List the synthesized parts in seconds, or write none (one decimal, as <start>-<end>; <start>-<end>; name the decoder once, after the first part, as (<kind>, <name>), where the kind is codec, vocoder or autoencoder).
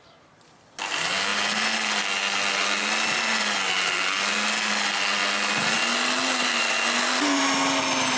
6.4-7.4 (vocoder, BigVGAN v2)